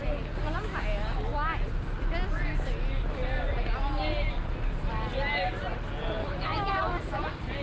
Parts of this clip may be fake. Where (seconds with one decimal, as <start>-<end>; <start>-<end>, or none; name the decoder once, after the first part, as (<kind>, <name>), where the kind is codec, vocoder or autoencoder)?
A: 6.2-6.8 (autoencoder, DAC-VAE)

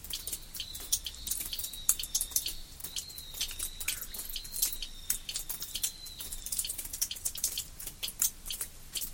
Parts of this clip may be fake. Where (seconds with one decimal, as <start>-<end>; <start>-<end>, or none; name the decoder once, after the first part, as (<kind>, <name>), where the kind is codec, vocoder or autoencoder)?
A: 0.0-2.8 (vocoder, BigVGAN v2); 6.2-9.1

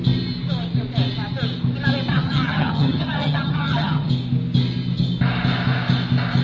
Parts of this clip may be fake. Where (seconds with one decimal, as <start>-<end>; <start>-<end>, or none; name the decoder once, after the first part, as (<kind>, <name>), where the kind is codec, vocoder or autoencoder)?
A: 2.1-4.1 (vocoder, HiFi-GAN)

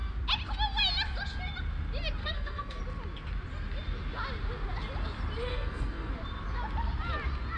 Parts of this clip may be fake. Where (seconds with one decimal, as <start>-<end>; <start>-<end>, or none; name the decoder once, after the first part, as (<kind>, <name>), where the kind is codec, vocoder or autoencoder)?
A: 2.2-2.8 (codec, SNAC); 5.5-6.1

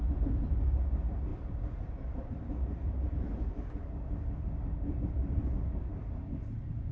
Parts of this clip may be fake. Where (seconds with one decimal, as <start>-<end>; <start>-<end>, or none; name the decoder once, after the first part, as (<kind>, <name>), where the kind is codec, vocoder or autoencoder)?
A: 1.3-5.4 (vocoder, BigVGAN v2)

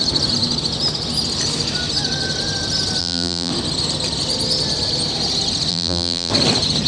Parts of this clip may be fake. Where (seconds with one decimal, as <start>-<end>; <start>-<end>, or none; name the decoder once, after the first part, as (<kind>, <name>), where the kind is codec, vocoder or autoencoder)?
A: 3.0-3.5 (vocoder, BigVGAN v2); 5.7-6.3

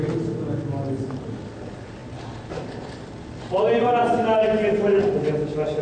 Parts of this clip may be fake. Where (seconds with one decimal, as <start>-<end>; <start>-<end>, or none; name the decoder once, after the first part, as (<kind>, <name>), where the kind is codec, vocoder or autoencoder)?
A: none

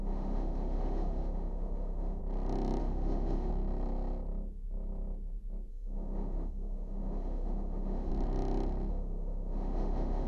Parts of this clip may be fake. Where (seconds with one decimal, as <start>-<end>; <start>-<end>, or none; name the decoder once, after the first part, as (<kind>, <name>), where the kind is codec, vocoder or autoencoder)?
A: 0.0-2.2 (autoencoder, DAC-VAE); 2.8-3.5; 5.7-8.1; 8.9-10.3